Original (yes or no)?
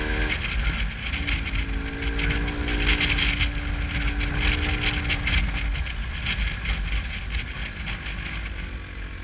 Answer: yes